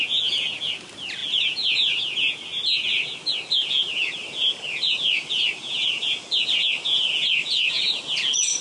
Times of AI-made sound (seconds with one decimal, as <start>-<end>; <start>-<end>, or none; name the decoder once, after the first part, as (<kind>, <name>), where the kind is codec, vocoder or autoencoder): none